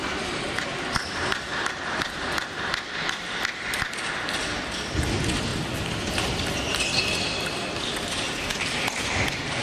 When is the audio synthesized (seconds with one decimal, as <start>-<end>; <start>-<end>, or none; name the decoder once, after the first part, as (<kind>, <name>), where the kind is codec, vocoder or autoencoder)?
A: 0.0-4.4 (vocoder, BigVGAN v2)